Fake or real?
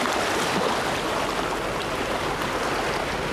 real